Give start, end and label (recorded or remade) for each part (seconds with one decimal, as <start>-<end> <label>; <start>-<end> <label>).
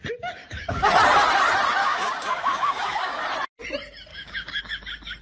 0.0-0.4 recorded; 0.4-0.9 remade; 0.9-1.8 recorded; 1.8-3.2 remade; 3.2-4.1 recorded; 4.1-4.6 remade; 4.6-5.2 recorded